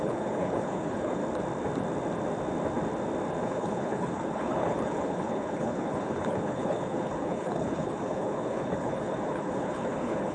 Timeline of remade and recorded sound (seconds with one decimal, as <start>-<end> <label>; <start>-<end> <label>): 0.0-1.2 remade; 1.2-3.4 recorded; 3.4-10.3 remade